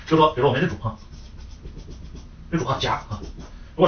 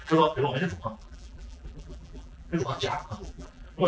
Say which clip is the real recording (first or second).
first